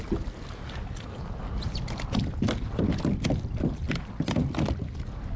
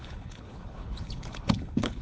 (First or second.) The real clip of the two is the first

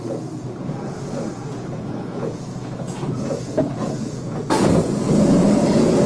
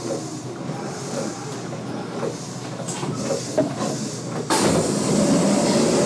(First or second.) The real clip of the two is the second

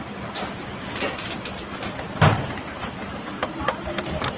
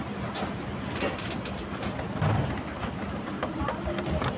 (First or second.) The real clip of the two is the second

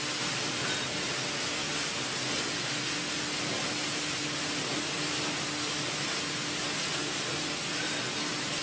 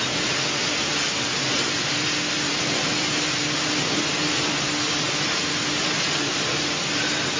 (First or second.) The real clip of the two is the first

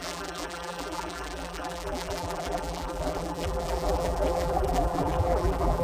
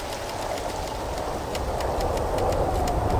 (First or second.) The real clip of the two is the second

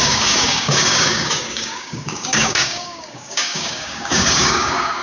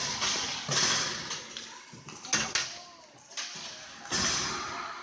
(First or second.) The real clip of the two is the second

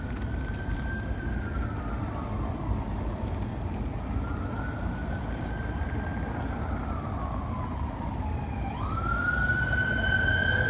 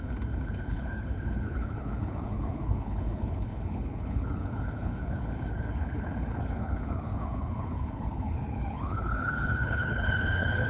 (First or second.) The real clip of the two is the first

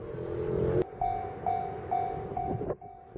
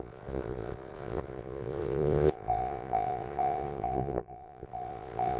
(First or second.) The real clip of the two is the first